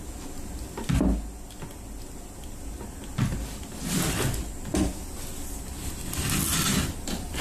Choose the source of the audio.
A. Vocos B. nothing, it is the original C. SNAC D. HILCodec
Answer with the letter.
B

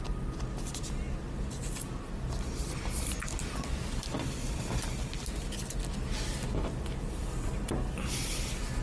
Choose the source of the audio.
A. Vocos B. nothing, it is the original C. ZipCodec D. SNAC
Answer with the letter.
B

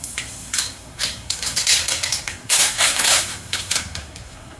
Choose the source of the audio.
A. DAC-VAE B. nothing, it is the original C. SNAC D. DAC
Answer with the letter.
C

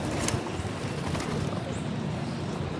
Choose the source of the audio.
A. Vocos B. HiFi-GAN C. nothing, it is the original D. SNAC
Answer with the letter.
C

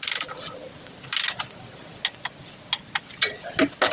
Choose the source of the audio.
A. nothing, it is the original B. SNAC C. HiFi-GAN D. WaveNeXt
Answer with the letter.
A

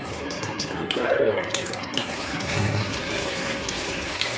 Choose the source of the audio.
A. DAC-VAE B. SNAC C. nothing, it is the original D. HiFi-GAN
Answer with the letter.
B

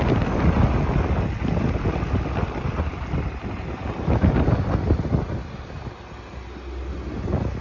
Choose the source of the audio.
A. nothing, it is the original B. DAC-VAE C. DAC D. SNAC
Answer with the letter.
A